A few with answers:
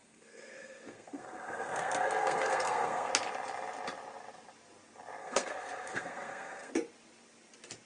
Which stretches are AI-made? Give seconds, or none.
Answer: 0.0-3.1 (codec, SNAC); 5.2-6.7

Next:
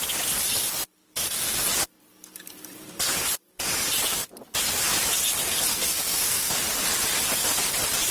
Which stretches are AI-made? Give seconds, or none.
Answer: 5.7-6.5 (codec, SNAC)